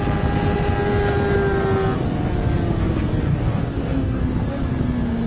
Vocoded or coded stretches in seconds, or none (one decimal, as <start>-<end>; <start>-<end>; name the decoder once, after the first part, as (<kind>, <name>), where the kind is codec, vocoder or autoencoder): 3.3-4.2 (codec, DAC)